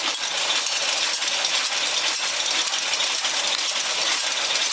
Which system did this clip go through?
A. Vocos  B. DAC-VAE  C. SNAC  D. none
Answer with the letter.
D